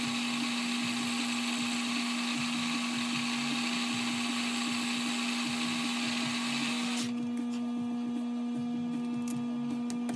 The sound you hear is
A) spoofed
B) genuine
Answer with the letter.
B